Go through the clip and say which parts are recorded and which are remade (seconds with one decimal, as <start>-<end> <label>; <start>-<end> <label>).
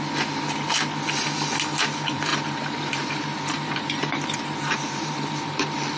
0.0-2.3 recorded; 2.3-6.0 remade